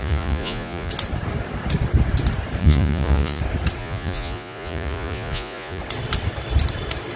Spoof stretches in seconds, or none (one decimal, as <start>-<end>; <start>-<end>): 0.0-0.9; 2.6-3.4; 3.8-5.8